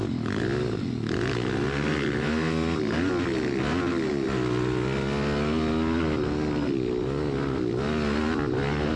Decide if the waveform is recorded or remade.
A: recorded